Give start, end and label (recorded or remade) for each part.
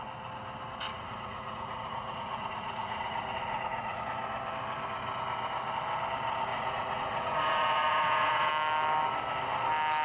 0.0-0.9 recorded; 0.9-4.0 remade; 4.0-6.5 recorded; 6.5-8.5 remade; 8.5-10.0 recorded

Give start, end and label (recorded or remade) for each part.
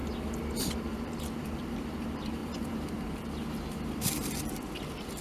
0.0-0.9 recorded; 0.9-5.2 remade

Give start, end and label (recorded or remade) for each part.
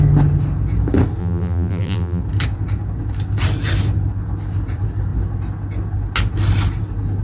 0.0-1.2 recorded; 1.2-2.2 remade; 2.2-7.2 recorded